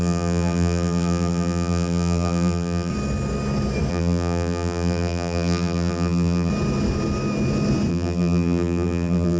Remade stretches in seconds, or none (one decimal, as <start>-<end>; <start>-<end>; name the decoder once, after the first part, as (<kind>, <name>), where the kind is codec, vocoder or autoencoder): 0.0-2.9 (vocoder, BigVGAN v2); 3.9-6.5; 7.9-9.4